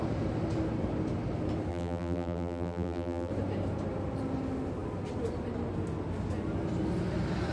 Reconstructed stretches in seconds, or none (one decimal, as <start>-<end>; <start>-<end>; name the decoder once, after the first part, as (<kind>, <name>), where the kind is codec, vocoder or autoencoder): 1.7-3.3 (vocoder, BigVGAN v2)

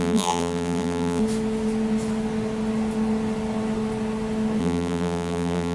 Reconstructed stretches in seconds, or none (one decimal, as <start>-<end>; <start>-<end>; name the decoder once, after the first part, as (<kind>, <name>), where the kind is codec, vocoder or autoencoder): 0.0-1.2 (vocoder, BigVGAN v2); 4.6-5.7

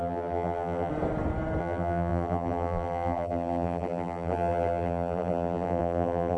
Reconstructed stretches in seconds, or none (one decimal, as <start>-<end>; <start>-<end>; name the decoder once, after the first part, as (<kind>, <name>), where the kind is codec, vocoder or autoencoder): 0.0-0.9 (vocoder, BigVGAN v2); 1.6-6.4

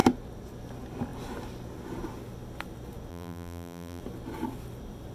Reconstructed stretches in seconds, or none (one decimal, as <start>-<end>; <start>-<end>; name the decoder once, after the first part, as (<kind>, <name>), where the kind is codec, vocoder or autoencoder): 3.1-4.0 (vocoder, BigVGAN v2)

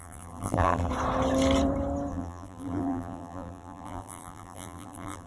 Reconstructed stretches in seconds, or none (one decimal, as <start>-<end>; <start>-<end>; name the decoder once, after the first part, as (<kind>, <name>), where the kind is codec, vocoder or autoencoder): 0.0-0.9 (vocoder, BigVGAN v2); 2.1-5.3

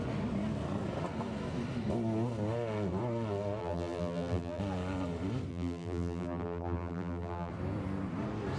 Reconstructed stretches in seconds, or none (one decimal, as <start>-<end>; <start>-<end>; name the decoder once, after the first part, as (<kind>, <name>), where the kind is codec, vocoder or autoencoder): 3.6-4.6 (vocoder, BigVGAN v2); 5.5-7.5